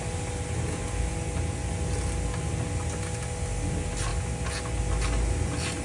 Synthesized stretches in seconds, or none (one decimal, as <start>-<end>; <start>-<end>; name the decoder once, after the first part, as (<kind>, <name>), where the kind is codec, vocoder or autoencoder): none